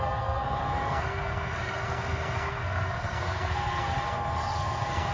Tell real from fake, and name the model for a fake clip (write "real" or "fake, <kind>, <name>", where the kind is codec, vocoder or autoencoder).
fake, codec, SNAC